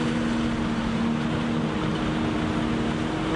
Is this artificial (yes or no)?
no